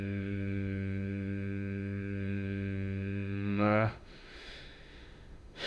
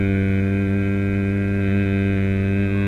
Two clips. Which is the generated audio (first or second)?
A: first